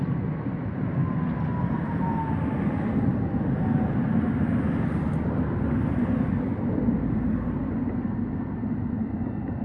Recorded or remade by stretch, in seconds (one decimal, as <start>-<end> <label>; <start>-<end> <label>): 0.0-9.6 recorded